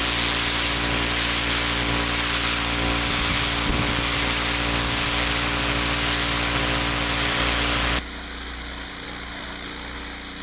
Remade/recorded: recorded